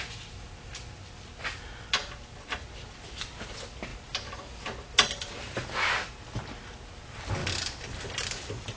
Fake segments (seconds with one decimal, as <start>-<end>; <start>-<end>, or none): none